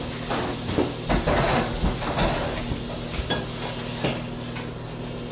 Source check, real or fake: real